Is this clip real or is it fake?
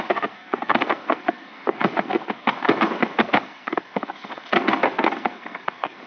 fake